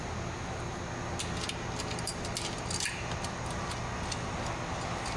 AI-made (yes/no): no